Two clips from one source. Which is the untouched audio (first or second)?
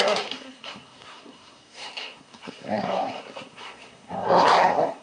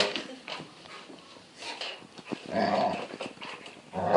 second